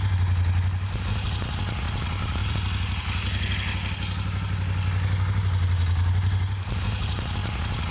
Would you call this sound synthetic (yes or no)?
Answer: no